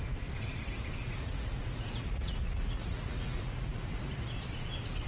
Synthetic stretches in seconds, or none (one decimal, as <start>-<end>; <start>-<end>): 1.0-4.1